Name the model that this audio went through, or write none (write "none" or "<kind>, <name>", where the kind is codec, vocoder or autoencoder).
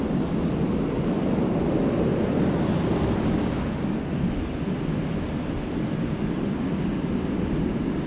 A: none